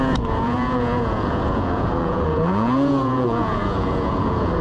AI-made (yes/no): yes